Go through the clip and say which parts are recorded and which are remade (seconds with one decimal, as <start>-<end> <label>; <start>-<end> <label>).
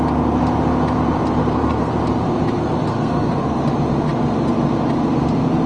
0.0-1.4 recorded; 1.4-1.9 remade; 1.9-2.9 recorded; 2.9-3.6 remade; 3.6-5.7 recorded